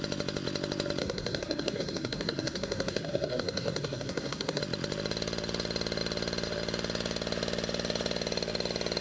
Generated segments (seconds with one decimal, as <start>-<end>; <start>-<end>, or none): 1.0-4.6

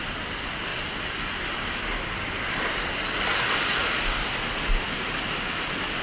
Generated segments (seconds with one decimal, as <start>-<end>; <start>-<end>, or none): none